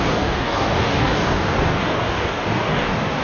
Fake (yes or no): yes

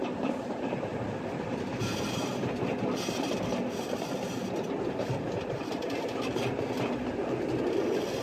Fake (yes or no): no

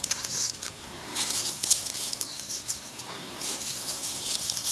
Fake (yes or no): yes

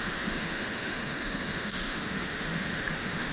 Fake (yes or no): yes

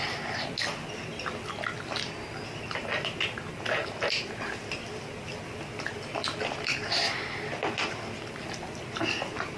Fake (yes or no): no